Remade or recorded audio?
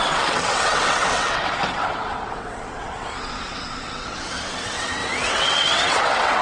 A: remade